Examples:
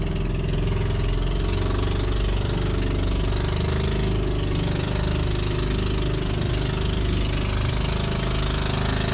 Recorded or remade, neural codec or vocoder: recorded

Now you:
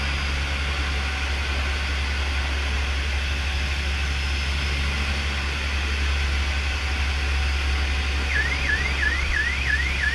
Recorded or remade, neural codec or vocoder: recorded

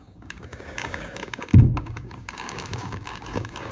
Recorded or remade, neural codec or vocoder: remade, codec, DAC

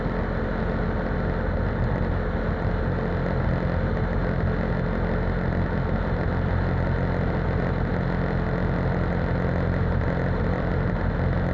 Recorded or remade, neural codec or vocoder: recorded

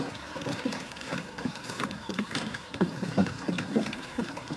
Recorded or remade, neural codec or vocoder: remade, codec, SNAC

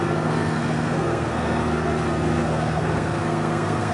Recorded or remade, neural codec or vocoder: remade, codec, SNAC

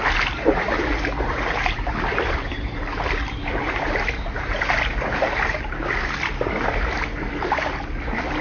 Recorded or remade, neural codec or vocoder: recorded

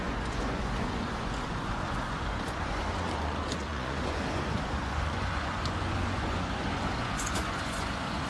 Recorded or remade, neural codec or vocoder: remade, vocoder, Vocos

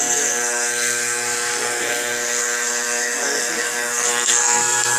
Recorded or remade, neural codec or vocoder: remade, codec, SNAC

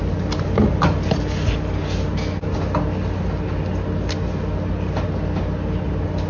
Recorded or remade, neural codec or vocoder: recorded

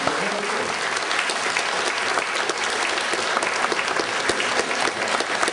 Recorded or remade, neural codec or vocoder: recorded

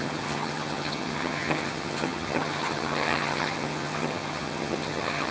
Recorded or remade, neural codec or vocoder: remade, vocoder, HiFi-GAN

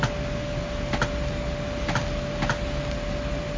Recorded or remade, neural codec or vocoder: recorded